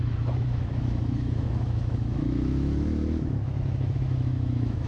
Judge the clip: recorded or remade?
remade